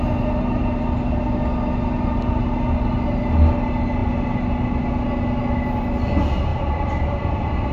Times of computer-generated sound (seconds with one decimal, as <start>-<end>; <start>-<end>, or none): 6.5-7.3